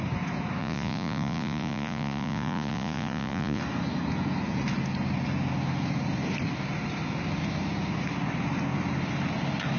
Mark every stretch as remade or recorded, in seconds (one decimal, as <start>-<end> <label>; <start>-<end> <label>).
0.0-0.6 recorded; 0.6-3.6 remade; 3.6-9.8 recorded